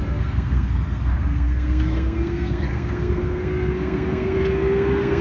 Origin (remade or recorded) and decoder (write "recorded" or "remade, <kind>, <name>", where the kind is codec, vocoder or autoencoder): remade, codec, SNAC